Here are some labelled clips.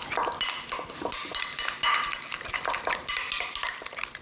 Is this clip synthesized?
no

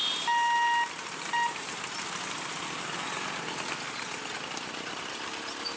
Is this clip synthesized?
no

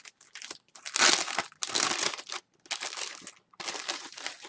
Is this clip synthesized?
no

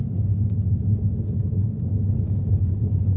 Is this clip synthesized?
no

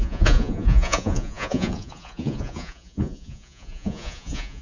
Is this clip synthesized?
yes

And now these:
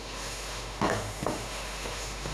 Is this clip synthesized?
yes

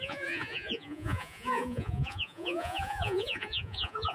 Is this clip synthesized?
yes